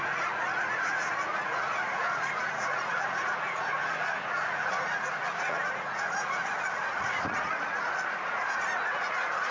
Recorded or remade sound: remade